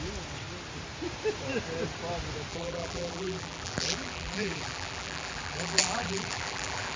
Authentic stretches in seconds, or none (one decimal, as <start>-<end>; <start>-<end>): 0.0-2.5